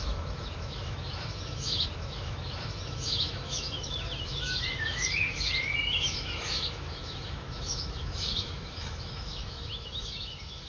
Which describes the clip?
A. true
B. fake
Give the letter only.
B